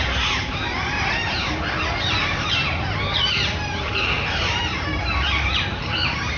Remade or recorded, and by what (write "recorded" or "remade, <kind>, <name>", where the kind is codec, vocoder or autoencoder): remade, vocoder, BigVGAN v2